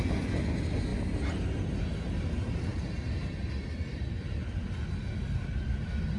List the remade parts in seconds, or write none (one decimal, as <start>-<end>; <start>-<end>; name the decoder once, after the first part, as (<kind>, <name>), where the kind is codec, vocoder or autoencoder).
none